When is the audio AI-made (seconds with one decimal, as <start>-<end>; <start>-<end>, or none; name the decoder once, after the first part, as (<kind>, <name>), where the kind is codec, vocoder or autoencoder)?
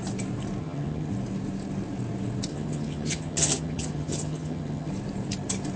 0.6-1.1 (vocoder, HiFi-GAN); 2.5-4.9